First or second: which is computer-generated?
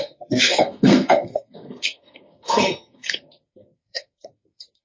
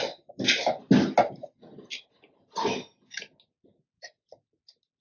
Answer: first